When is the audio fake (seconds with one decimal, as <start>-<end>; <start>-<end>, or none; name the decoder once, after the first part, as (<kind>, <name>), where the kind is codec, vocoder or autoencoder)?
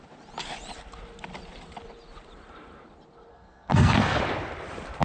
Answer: 3.3-4.2 (codec, SNAC)